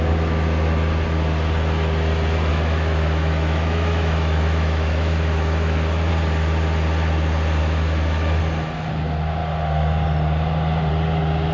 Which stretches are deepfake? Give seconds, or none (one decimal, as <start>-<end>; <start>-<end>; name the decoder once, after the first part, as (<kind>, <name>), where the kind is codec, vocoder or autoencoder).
2.5-6.1 (autoencoder, DAC-VAE); 7.6-8.4